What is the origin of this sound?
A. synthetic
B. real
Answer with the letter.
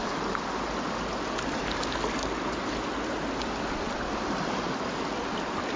B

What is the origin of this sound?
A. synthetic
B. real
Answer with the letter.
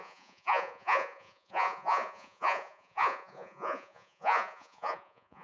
A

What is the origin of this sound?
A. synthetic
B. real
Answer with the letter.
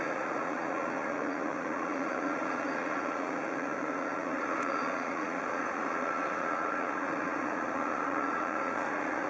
A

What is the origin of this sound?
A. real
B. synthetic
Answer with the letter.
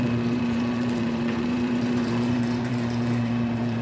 B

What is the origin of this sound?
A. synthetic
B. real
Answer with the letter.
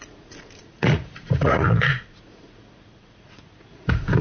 A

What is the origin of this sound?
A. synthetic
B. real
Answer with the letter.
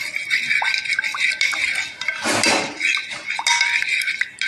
B